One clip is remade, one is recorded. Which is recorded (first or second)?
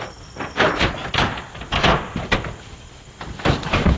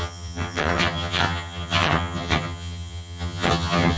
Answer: first